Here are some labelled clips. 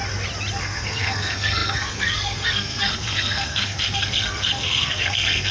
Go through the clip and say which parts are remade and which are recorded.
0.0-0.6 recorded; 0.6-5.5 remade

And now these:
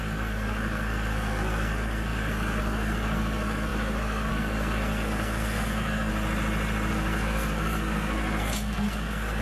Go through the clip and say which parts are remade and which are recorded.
0.0-6.1 remade; 6.1-6.9 recorded; 6.9-9.4 remade

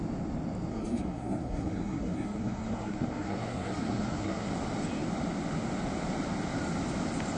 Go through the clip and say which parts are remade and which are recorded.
0.0-0.7 recorded; 0.7-4.5 remade; 4.5-7.4 recorded

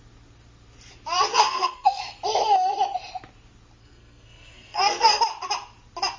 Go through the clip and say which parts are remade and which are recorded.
0.0-1.3 recorded; 1.3-2.0 remade; 2.0-3.8 recorded; 3.8-5.2 remade; 5.2-6.2 recorded

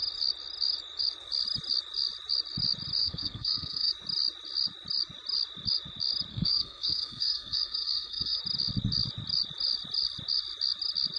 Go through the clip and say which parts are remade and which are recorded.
0.0-3.0 recorded; 3.0-3.9 remade; 3.9-6.3 recorded; 6.3-8.4 remade; 8.4-11.2 recorded

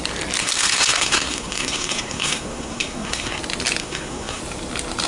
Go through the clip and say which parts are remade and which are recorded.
0.0-0.4 recorded; 0.4-3.4 remade; 3.4-3.8 recorded; 3.8-4.4 remade; 4.4-5.1 recorded

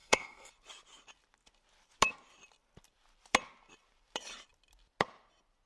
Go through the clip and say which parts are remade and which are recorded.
0.0-0.5 remade; 0.5-5.7 recorded